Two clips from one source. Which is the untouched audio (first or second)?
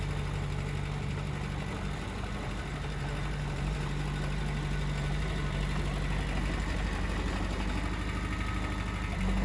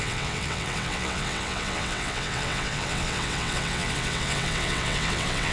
first